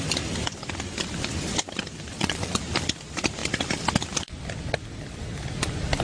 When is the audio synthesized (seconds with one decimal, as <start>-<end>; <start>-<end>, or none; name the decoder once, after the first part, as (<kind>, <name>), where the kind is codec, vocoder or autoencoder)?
2.1-2.6 (vocoder, WaveNeXt)